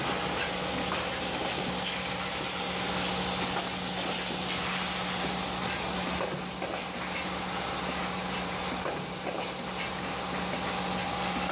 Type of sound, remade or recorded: recorded